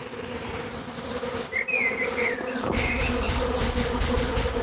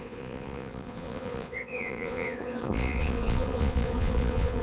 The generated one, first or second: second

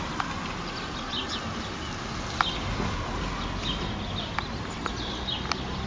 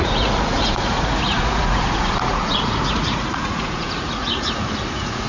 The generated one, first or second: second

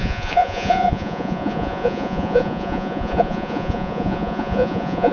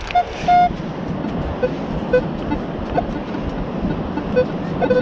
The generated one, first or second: first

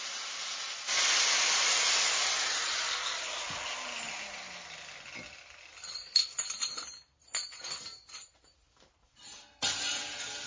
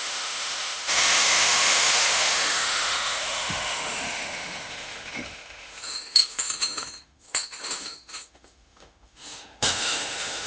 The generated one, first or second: second